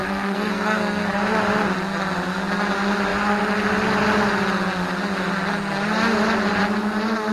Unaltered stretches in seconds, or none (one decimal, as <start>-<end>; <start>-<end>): 1.2-7.3